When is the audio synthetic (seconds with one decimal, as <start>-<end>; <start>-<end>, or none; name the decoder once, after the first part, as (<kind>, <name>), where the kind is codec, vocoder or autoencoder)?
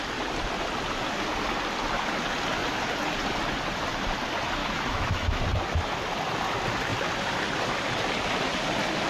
4.6-5.4 (autoencoder, DAC-VAE)